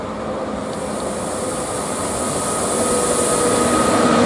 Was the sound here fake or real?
real